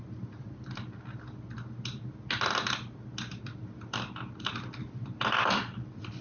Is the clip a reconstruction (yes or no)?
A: no